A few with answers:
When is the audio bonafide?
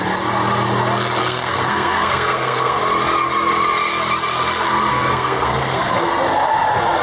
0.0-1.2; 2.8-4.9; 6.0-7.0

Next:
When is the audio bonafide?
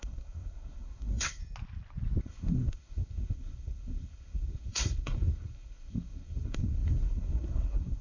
1.4-2.2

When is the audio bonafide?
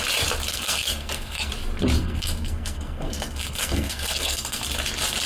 0.0-0.5; 1.5-2.0; 4.6-5.3